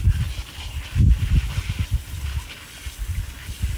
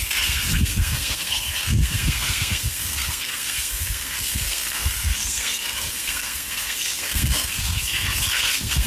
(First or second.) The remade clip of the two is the second